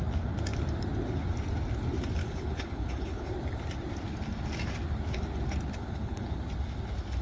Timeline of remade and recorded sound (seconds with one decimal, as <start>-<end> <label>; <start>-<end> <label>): 0.0-2.2 recorded; 2.2-3.3 remade; 3.3-5.8 recorded; 5.8-6.4 remade; 6.4-7.2 recorded